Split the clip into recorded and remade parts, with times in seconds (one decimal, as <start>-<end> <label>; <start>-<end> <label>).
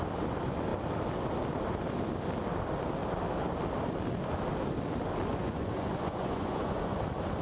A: 0.0-5.3 recorded; 5.3-7.0 remade; 7.0-7.4 recorded